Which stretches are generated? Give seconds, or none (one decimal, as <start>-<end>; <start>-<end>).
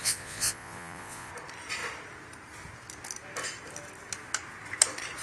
0.0-1.3